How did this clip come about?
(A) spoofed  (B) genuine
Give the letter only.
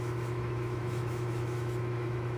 A